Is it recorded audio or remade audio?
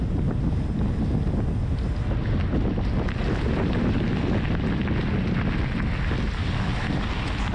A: recorded